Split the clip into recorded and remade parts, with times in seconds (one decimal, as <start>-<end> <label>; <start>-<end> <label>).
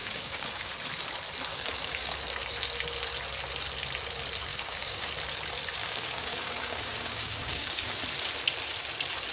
0.0-0.7 remade; 0.7-1.5 recorded; 1.5-2.2 remade; 2.2-4.5 recorded; 4.5-5.1 remade; 5.1-5.8 recorded; 5.8-8.0 remade; 8.0-9.3 recorded